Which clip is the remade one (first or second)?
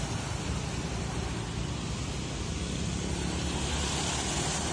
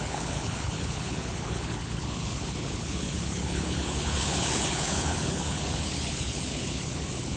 second